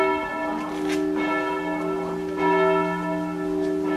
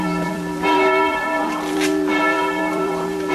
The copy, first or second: second